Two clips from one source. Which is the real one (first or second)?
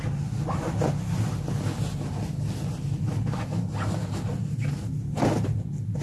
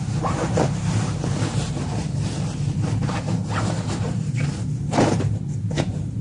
first